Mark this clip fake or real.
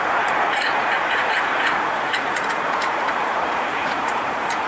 fake